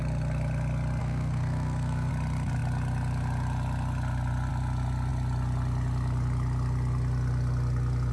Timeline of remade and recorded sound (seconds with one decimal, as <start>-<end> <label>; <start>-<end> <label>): 0.0-1.0 recorded; 1.0-2.1 remade; 2.1-8.1 recorded

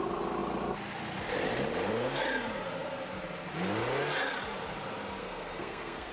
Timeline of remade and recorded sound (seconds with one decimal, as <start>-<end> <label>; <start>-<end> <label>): 0.0-5.2 recorded; 5.2-6.1 remade

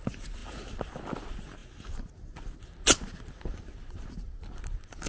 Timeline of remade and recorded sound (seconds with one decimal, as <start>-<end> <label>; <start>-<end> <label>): 0.0-5.1 recorded

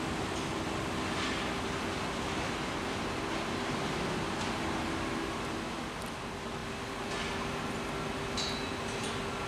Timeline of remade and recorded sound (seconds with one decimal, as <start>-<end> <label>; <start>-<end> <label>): 0.0-9.5 recorded

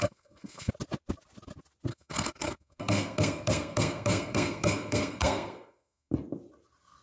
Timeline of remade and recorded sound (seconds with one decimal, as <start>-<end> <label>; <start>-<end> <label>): 0.0-0.7 remade; 0.7-1.9 recorded; 1.9-6.1 remade; 6.1-7.0 recorded

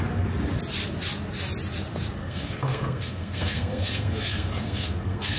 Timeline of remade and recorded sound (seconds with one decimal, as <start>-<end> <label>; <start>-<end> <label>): 0.0-2.2 recorded; 2.2-5.4 remade

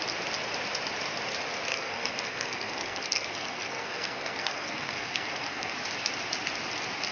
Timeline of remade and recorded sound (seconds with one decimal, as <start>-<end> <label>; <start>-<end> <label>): 0.0-1.7 recorded; 1.7-5.7 remade; 5.7-7.1 recorded

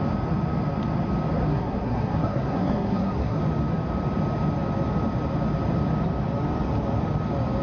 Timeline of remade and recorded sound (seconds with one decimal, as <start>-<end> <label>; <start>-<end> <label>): 0.0-1.5 recorded; 1.5-3.4 remade; 3.4-7.6 recorded